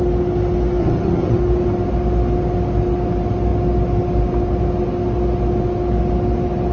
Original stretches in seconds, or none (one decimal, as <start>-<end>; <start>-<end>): 0.0-0.8; 1.4-6.7